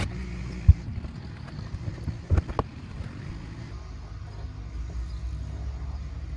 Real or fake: real